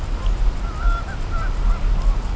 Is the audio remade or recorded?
recorded